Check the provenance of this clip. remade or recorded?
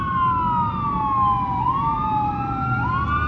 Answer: recorded